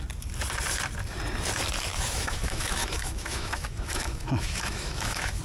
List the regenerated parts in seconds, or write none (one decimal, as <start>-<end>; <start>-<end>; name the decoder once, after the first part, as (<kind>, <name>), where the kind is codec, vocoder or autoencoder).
1.9-5.4 (autoencoder, DAC-VAE)